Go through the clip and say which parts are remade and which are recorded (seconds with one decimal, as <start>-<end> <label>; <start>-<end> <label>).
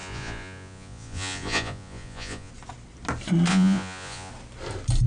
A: 0.0-2.5 remade; 2.5-3.5 recorded; 3.5-4.3 remade; 4.3-5.1 recorded